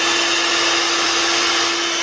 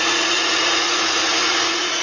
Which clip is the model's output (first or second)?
second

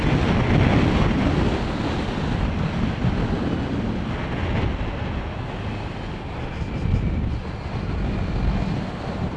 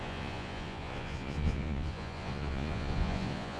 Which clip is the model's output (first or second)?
second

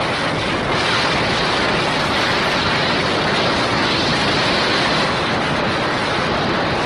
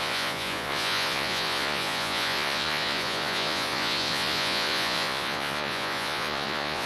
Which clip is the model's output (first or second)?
second